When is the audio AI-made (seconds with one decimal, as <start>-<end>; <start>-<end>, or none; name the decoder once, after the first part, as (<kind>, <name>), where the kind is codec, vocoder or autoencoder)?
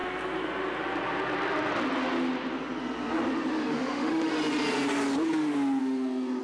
3.7-4.3 (autoencoder, DAC-VAE); 5.8-6.4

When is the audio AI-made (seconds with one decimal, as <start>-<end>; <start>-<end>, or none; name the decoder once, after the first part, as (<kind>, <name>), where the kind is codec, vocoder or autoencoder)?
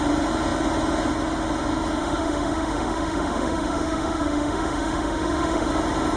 2.0-5.7 (autoencoder, DAC-VAE)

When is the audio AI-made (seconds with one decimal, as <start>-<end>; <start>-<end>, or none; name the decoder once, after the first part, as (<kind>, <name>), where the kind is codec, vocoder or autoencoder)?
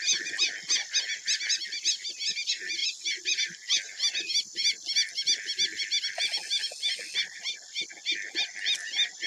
none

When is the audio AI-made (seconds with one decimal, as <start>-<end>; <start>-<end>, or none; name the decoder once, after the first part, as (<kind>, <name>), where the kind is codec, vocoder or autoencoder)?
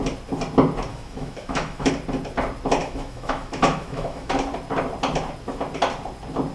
0.9-1.9 (autoencoder, DAC-VAE); 2.8-4.3